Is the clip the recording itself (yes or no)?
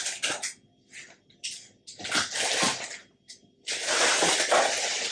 yes